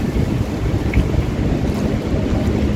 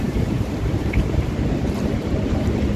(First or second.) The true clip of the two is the first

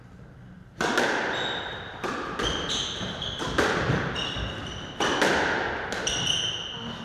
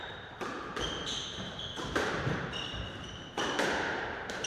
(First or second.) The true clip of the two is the first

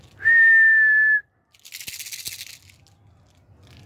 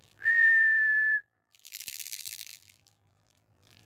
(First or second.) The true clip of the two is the first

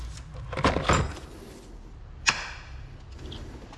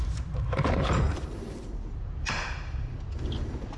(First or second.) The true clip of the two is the first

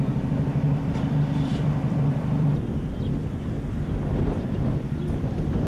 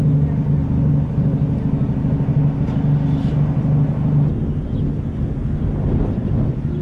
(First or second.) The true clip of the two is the second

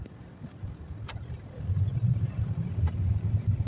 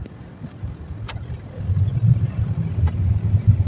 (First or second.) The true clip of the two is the second